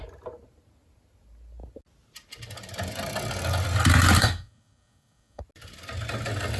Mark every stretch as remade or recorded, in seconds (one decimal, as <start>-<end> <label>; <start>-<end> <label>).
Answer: 0.0-4.2 recorded; 4.2-5.4 remade; 5.4-6.6 recorded